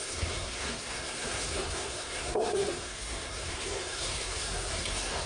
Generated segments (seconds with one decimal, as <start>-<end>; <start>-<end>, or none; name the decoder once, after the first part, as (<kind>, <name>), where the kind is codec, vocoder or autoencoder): 0.0-5.3 (codec, SNAC)